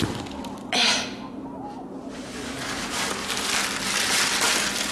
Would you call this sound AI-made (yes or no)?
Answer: no